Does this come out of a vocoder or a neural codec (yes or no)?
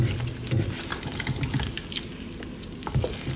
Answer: no